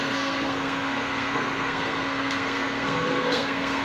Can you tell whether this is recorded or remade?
remade